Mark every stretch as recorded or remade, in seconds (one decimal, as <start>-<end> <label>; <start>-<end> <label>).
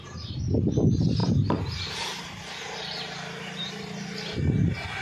0.0-1.2 recorded; 1.2-3.7 remade; 3.7-5.0 recorded